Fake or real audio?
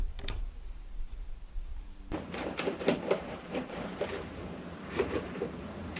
fake